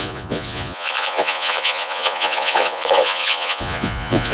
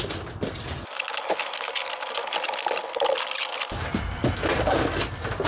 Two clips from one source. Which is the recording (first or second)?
second